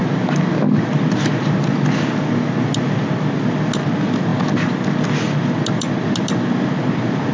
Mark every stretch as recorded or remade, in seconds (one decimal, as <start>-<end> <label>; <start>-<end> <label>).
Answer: 0.0-7.3 recorded